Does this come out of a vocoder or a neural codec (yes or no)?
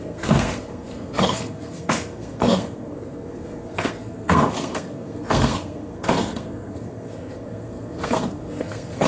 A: yes